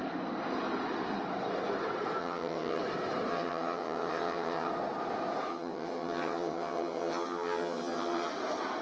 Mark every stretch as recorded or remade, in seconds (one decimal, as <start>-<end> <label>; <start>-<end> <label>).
0.0-2.2 recorded; 2.2-2.8 remade; 2.8-3.3 recorded; 3.3-4.7 remade; 4.7-5.5 recorded; 5.5-8.3 remade; 8.3-8.8 recorded